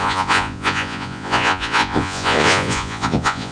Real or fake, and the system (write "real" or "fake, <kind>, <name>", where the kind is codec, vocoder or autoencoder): fake, vocoder, Vocos